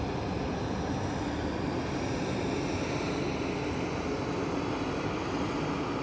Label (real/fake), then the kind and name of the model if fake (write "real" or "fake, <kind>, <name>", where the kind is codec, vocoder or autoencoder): real